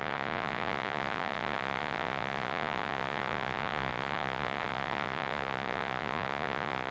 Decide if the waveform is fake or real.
fake